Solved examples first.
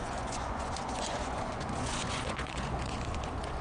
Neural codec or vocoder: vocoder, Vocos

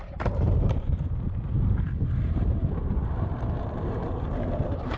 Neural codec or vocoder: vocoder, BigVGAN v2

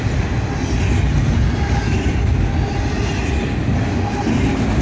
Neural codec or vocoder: none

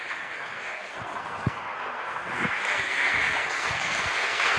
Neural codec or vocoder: codec, SNAC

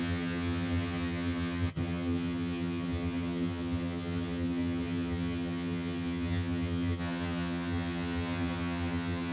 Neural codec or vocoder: vocoder, HiFi-GAN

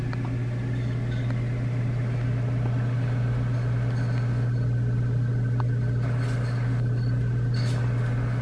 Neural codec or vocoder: none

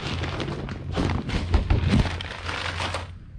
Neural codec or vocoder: none